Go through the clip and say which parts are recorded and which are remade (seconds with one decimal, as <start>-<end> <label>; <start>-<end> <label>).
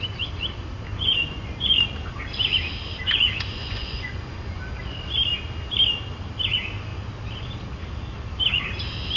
0.0-0.9 recorded; 0.9-2.2 remade; 2.2-3.0 recorded; 3.0-4.6 remade; 4.6-9.2 recorded